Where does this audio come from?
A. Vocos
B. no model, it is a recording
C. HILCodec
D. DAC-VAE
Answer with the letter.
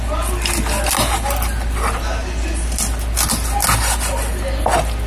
B